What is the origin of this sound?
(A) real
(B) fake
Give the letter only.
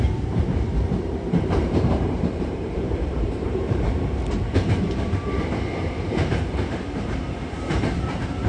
B